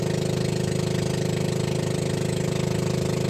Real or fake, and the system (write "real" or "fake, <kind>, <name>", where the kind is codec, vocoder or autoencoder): real